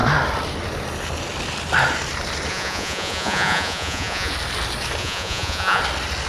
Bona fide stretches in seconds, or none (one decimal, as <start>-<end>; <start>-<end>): 0.0-2.5; 4.3-5.0; 5.8-6.3